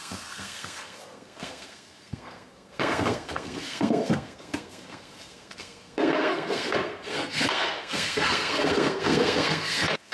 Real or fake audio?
fake